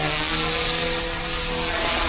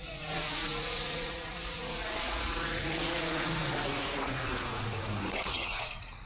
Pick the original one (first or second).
first